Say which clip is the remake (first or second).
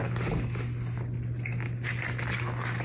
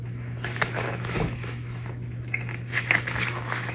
second